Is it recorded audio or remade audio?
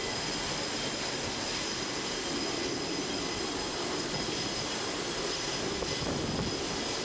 recorded